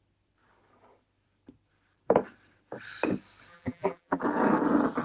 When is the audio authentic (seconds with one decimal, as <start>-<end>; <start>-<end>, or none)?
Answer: 0.0-3.5; 4.2-5.0